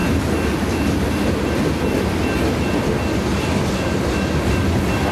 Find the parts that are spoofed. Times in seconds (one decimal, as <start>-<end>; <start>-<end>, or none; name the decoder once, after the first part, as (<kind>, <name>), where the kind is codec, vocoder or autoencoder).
none